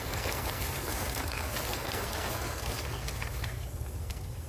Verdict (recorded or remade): remade